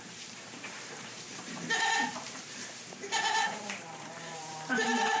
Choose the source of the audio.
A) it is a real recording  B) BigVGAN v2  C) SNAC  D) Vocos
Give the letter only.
B